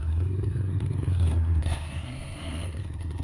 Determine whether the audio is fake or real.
fake